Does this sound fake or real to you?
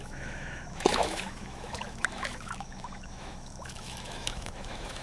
fake